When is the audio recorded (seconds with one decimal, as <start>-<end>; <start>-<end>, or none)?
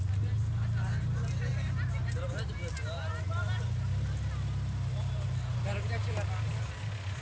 0.0-7.2